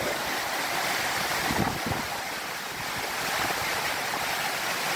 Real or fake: real